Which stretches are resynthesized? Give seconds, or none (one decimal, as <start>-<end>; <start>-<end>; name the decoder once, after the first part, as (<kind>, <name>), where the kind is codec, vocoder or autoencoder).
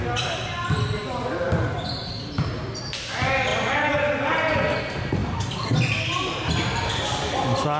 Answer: none